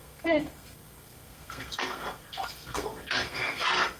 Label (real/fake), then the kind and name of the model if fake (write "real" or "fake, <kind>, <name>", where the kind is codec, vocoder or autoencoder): fake, codec, SNAC